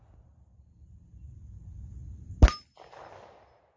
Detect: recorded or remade recorded